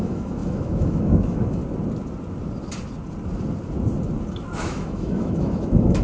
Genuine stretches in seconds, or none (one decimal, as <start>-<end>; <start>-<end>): 1.6-4.6